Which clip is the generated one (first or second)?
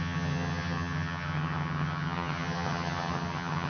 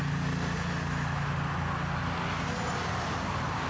first